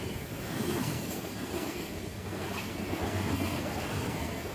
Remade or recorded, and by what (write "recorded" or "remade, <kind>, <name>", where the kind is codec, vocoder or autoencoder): remade, codec, SNAC